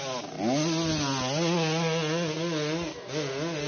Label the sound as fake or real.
real